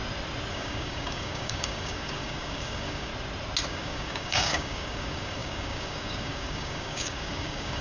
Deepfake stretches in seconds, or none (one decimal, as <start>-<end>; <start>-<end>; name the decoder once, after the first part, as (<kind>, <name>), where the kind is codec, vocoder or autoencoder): 0.5-3.1 (codec, DAC); 3.7-7.8